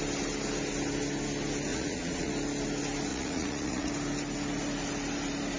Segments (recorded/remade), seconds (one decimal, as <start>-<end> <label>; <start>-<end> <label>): 0.0-1.7 recorded; 1.7-2.3 remade; 2.3-3.1 recorded; 3.1-3.9 remade; 3.9-5.6 recorded